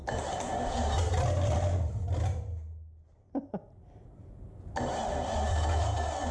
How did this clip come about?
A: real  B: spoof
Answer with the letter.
A